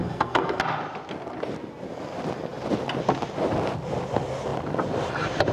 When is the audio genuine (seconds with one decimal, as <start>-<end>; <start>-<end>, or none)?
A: 0.6-5.5